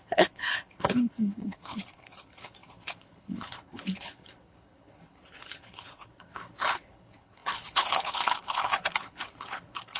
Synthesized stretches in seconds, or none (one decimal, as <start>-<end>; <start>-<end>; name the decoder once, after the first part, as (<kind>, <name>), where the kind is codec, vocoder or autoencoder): 0.0-10.0 (codec, HILCodec)